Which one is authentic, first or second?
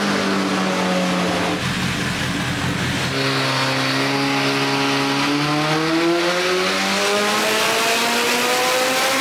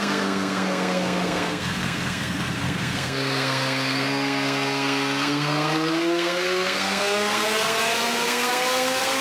first